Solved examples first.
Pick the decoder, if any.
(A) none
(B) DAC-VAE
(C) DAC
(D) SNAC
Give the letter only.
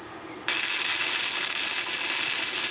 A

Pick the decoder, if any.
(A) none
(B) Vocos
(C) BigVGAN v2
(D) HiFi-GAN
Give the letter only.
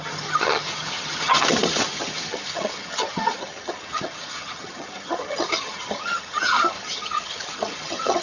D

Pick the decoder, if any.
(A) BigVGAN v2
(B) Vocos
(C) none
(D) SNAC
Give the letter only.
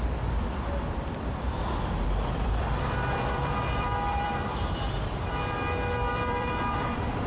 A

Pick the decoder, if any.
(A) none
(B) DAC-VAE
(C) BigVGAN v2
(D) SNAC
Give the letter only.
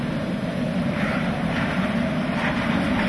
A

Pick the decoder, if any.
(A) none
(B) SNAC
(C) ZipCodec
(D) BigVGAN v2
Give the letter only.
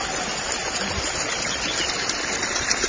A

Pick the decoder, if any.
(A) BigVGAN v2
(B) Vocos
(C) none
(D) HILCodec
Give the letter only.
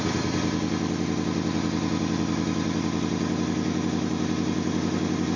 C